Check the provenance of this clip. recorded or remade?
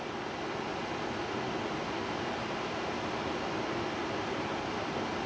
recorded